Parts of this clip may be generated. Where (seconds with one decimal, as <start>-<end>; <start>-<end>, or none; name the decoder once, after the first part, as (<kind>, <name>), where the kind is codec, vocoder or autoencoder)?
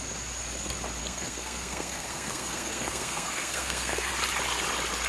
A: 1.0-4.1 (codec, SNAC)